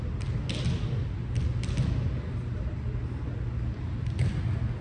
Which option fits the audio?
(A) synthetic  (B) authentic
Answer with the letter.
B